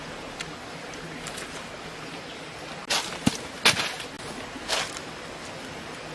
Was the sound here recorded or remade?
recorded